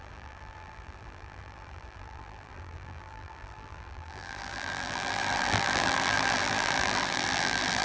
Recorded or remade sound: remade